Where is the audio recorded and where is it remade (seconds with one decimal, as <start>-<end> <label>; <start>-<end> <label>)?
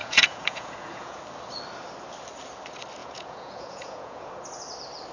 0.0-1.2 remade; 1.2-3.0 recorded; 3.0-4.3 remade; 4.3-5.1 recorded